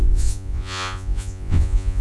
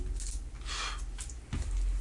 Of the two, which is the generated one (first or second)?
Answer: first